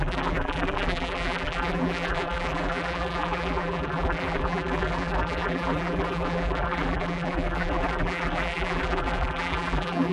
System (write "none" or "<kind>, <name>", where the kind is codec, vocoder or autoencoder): vocoder, BigVGAN v2